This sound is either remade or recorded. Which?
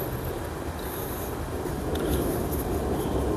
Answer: recorded